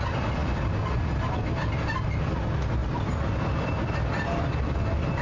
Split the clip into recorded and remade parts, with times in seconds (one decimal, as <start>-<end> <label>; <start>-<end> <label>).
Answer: 0.0-5.2 recorded